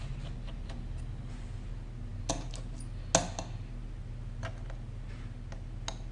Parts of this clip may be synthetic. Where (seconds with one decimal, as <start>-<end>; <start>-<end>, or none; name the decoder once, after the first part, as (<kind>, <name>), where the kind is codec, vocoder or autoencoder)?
none